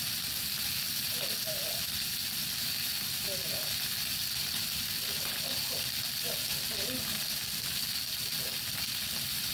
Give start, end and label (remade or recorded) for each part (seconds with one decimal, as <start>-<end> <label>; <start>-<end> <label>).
0.0-9.5 recorded